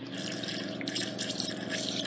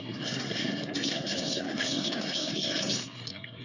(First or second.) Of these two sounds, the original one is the first